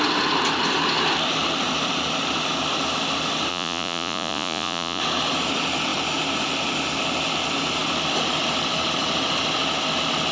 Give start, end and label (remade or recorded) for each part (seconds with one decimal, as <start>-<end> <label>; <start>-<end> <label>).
0.0-3.5 recorded; 3.5-5.0 remade; 5.0-10.3 recorded